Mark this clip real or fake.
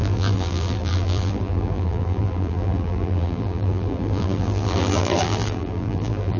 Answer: fake